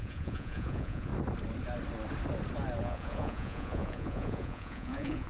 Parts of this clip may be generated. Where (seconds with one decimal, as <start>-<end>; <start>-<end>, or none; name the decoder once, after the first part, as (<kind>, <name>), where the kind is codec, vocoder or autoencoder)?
0.0-1.1 (vocoder, Vocos); 2.8-5.3